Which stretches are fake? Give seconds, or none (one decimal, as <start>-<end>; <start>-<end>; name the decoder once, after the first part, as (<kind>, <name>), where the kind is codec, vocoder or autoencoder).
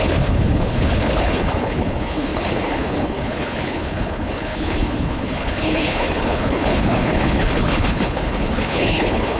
0.0-9.4 (codec, HILCodec)